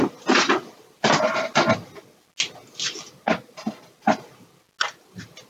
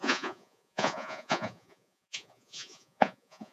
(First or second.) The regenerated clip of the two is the second